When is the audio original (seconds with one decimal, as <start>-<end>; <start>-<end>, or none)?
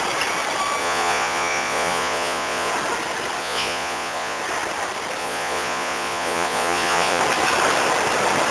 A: 0.0-0.8; 2.7-3.4; 4.4-5.2; 7.2-8.5